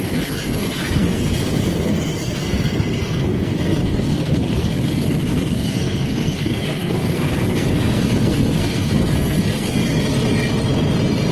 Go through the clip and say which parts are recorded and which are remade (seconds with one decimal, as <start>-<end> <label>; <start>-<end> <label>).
0.0-9.8 remade; 9.8-11.3 recorded